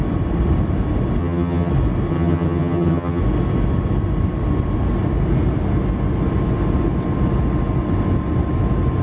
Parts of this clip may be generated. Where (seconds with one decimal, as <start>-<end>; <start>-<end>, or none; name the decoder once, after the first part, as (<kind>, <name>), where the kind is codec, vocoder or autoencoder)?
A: 1.2-1.7 (vocoder, HiFi-GAN); 2.1-3.2